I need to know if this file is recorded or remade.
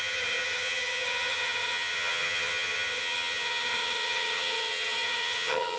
remade